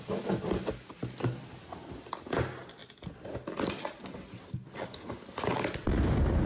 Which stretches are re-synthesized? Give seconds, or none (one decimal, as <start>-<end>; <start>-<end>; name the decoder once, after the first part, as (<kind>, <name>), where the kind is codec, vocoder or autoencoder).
none

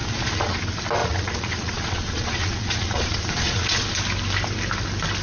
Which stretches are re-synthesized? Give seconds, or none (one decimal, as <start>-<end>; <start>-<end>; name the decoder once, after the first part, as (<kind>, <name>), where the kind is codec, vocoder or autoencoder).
0.0-0.6 (vocoder, Vocos); 1.0-3.9

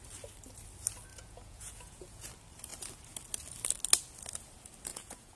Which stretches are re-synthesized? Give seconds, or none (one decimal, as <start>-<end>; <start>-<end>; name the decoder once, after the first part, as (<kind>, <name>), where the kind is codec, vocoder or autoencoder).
1.1-2.3 (vocoder, Vocos); 4.9-5.4